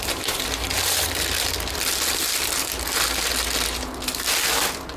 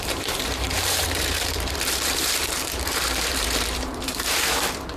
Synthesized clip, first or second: second